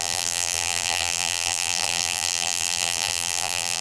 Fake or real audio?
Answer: fake